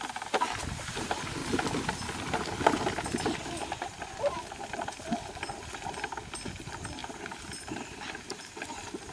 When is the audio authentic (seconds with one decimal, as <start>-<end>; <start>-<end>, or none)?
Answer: 1.4-4.1; 5.1-6.6